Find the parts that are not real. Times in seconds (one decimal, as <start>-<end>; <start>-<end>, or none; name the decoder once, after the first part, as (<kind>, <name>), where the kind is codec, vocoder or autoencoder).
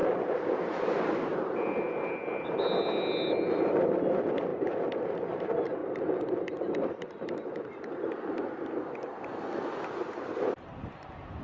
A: 5.8-8.3 (vocoder, BigVGAN v2)